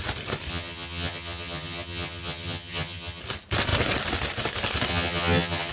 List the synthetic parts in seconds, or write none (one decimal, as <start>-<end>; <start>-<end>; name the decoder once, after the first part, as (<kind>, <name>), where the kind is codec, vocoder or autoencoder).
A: 0.5-3.2 (vocoder, HiFi-GAN); 4.9-5.7